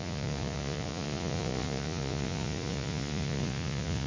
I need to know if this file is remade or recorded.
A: remade